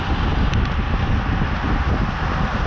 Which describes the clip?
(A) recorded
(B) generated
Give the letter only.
A